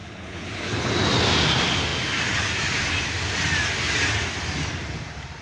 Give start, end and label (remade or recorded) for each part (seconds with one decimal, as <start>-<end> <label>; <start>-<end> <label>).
0.0-0.9 remade; 0.9-5.4 recorded

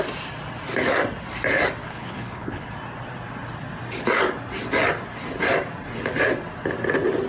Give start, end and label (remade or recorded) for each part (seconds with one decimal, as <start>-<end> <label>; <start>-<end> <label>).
0.0-1.8 recorded; 1.8-2.7 remade; 2.7-7.3 recorded

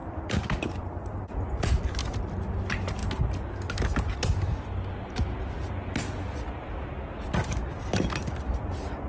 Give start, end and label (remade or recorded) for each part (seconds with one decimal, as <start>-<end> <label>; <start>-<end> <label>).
0.0-9.1 recorded

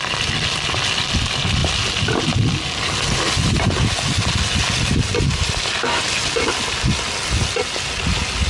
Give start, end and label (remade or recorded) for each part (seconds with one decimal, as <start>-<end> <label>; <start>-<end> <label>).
0.0-8.5 recorded

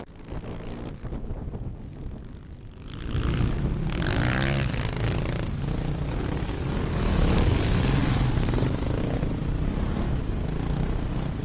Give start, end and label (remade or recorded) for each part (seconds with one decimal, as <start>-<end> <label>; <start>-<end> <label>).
0.0-11.4 recorded

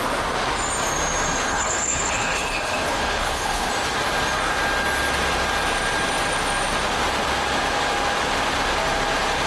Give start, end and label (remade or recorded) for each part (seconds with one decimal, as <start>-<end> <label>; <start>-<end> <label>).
0.0-1.4 recorded; 1.4-3.7 remade; 3.7-9.5 recorded

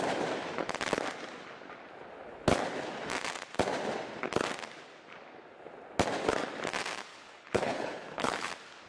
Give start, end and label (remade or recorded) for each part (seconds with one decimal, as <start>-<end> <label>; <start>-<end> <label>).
0.0-7.1 recorded; 7.1-8.5 remade; 8.5-8.9 recorded